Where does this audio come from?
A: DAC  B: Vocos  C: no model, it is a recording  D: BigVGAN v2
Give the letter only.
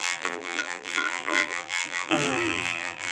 D